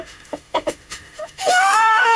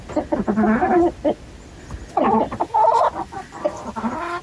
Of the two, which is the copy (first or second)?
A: first